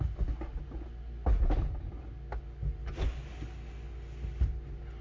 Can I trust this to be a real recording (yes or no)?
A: yes